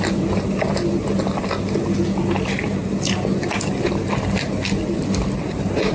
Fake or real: real